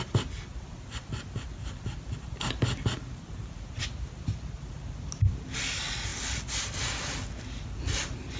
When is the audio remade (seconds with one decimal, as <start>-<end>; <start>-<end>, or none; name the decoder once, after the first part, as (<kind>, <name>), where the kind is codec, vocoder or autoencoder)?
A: none